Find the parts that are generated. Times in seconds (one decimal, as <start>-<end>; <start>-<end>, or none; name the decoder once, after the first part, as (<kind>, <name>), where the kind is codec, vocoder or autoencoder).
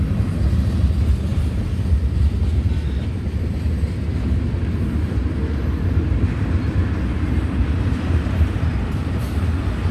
7.6-9.2 (vocoder, BigVGAN v2)